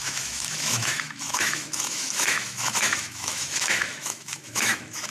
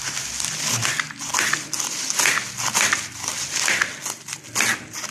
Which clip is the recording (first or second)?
second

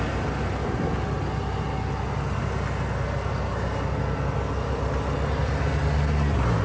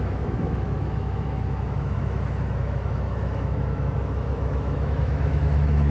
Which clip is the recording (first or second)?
first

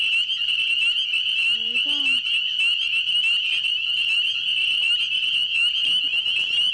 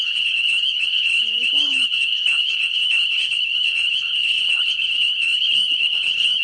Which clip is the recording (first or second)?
first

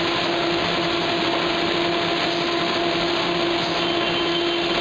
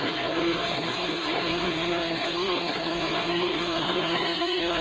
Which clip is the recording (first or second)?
first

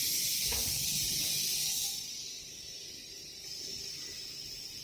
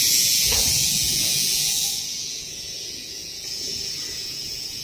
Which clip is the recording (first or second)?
first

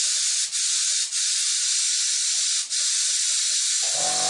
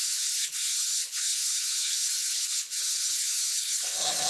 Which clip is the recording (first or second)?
first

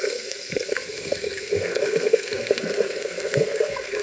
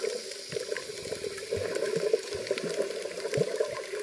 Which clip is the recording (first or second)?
second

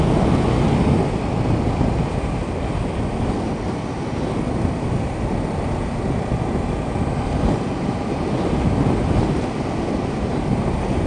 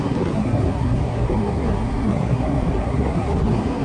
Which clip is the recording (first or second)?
first